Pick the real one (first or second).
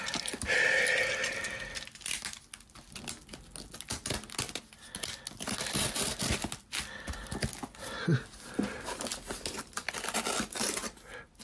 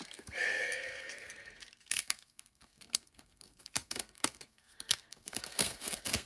first